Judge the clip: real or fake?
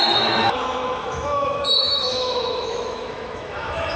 fake